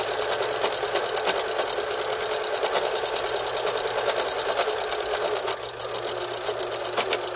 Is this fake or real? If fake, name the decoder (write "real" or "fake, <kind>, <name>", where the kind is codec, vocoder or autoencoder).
real